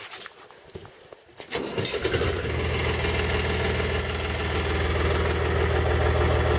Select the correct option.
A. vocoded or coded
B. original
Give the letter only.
B